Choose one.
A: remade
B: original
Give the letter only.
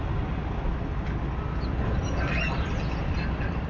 B